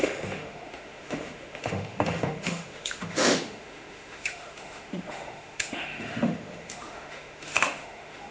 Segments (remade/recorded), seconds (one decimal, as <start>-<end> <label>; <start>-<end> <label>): 0.0-8.3 remade